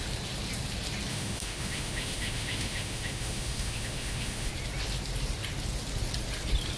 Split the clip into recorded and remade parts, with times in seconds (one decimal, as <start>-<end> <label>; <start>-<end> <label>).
0.0-1.1 recorded; 1.1-4.5 remade; 4.5-6.8 recorded

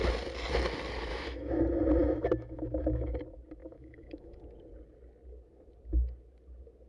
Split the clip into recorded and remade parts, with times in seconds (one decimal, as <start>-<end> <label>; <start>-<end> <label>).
0.0-1.1 recorded; 1.1-1.6 remade; 1.6-2.0 recorded; 2.0-3.2 remade; 3.2-3.6 recorded; 3.6-4.4 remade; 4.4-6.9 recorded

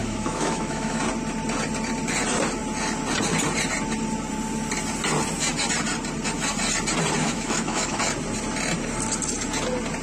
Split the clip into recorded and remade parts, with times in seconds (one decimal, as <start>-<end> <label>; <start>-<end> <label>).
0.0-1.0 remade; 1.0-7.2 recorded; 7.2-8.0 remade; 8.0-10.0 recorded

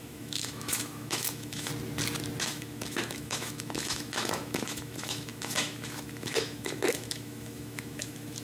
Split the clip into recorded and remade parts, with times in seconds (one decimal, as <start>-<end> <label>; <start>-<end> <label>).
0.0-1.7 remade; 1.7-2.4 recorded; 2.4-8.4 remade

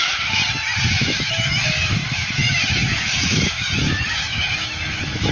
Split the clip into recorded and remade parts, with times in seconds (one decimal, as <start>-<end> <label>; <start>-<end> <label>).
0.0-0.4 remade; 0.4-0.9 recorded; 0.9-5.3 remade